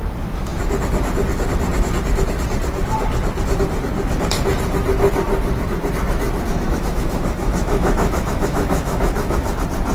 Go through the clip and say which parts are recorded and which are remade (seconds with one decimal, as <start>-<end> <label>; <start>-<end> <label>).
0.0-6.5 recorded; 6.5-9.5 remade; 9.5-9.9 recorded